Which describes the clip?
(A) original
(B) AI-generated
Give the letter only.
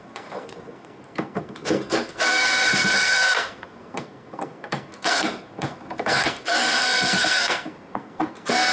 B